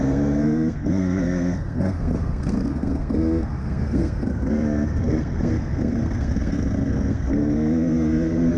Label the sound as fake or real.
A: fake